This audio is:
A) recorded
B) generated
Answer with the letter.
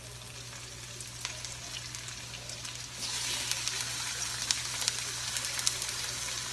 A